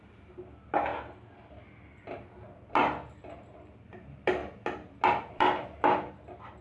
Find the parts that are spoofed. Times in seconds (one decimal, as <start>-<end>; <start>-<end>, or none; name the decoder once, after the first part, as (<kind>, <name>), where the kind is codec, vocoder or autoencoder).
0.0-0.9 (vocoder, BigVGAN v2); 2.0-2.8; 3.9-4.4; 5.3-6.6